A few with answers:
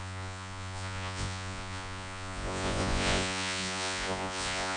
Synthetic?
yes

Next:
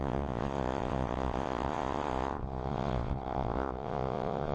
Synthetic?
yes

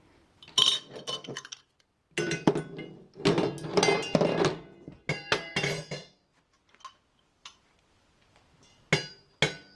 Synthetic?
no